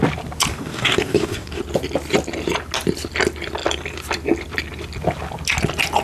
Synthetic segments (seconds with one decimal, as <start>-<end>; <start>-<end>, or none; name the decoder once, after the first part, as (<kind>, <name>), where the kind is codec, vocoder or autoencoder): 0.5-1.6 (codec, DAC)